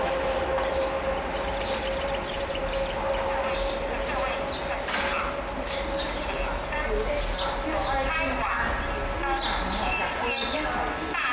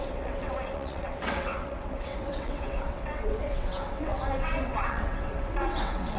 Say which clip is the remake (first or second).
second